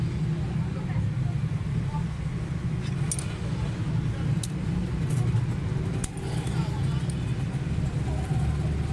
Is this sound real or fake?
real